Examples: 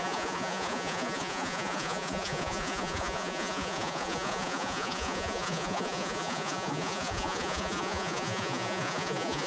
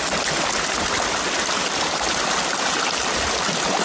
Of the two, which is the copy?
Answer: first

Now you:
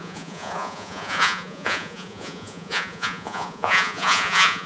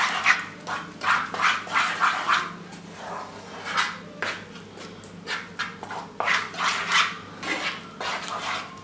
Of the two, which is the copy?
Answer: first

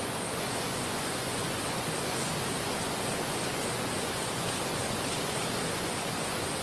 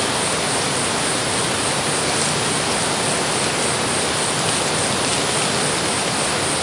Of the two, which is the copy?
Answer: first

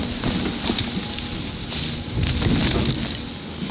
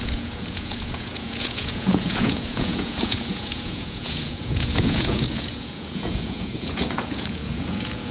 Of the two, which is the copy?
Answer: second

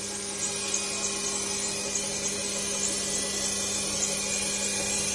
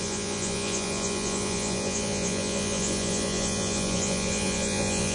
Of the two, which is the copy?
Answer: second